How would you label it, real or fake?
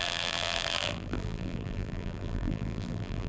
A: fake